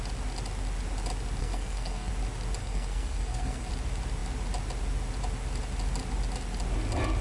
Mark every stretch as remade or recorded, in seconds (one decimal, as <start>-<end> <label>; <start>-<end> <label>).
0.0-1.4 recorded; 1.4-2.1 remade; 2.1-2.6 recorded; 2.6-3.7 remade; 3.7-7.2 recorded